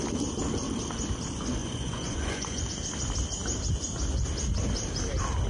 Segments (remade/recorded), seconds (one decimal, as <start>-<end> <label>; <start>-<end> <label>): 0.0-1.6 recorded; 1.6-2.6 remade; 2.6-5.5 recorded